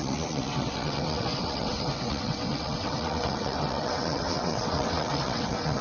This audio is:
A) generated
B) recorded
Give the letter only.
A